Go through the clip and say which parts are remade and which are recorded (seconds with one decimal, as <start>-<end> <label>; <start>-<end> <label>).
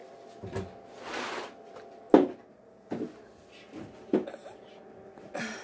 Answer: 0.0-5.6 recorded